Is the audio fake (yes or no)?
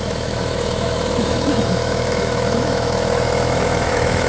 yes